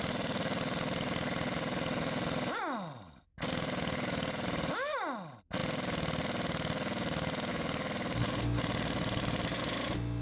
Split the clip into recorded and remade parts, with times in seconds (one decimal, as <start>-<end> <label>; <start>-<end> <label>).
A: 0.0-10.2 recorded